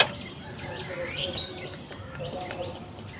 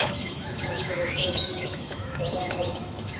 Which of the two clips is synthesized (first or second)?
second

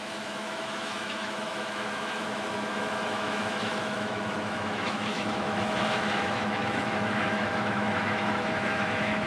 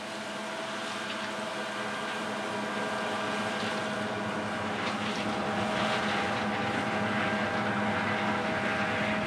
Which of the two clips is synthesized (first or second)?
first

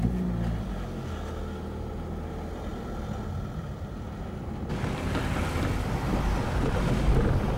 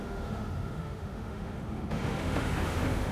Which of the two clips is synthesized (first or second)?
second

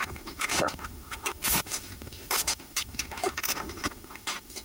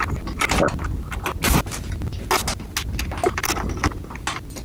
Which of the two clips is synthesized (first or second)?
first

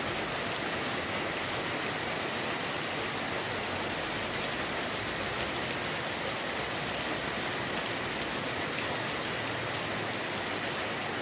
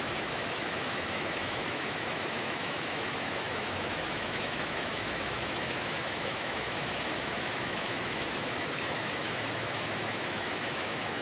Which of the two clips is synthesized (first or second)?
second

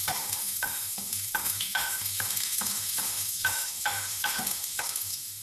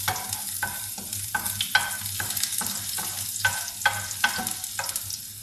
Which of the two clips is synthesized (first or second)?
first